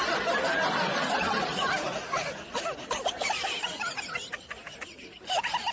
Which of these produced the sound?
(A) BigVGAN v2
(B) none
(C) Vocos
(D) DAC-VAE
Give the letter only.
B